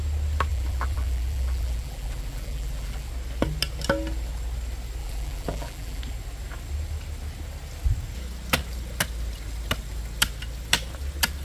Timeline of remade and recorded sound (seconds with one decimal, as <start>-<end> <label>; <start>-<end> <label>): 0.0-0.5 recorded; 0.5-3.1 remade; 3.1-5.0 recorded; 5.0-6.0 remade; 6.0-11.4 recorded